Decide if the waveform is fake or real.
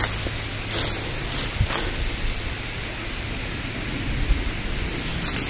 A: real